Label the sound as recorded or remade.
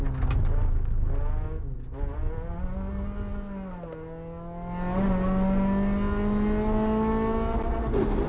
recorded